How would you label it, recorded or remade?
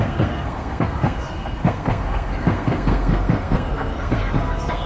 remade